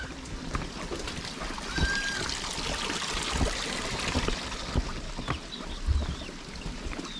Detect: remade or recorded recorded